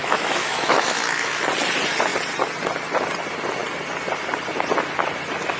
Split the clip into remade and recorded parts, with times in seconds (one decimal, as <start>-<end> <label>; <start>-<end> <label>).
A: 0.0-1.4 remade; 1.4-5.6 recorded